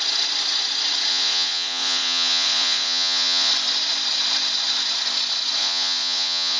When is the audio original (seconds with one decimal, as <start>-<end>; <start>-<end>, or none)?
0.0-1.1; 3.5-5.6